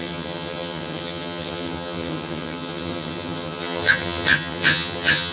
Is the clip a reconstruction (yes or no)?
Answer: yes